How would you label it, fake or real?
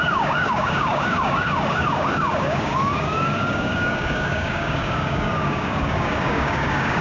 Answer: fake